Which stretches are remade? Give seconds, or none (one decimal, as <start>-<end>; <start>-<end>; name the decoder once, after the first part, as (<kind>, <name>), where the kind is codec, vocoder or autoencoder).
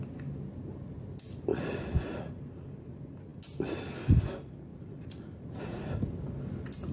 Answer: 1.5-2.3 (vocoder, Vocos); 4.7-5.9